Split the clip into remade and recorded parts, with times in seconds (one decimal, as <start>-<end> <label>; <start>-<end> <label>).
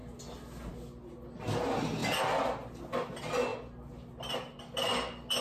0.0-5.4 recorded